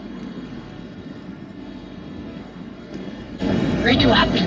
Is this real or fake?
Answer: fake